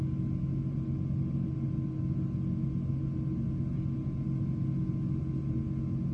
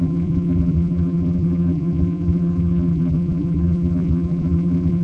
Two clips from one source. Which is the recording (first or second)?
first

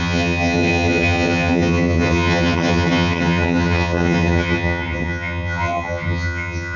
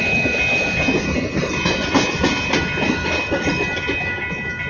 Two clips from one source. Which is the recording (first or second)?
second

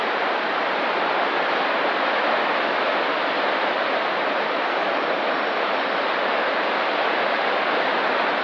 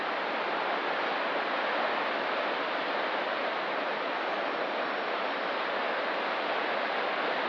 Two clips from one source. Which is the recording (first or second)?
second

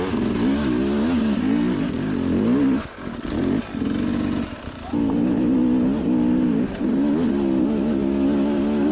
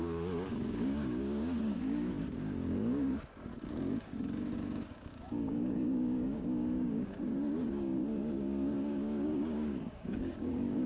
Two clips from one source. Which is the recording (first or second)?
first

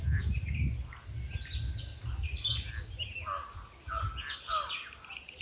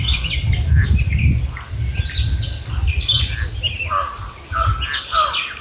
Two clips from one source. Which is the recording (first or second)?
first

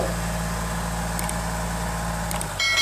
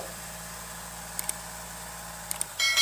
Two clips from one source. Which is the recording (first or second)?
first